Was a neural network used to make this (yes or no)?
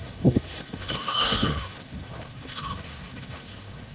yes